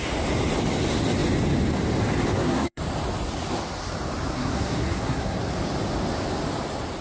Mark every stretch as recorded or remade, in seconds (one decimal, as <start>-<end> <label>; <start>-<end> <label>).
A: 0.0-2.3 recorded; 2.3-2.8 remade; 2.8-4.3 recorded; 4.3-5.4 remade; 5.4-7.0 recorded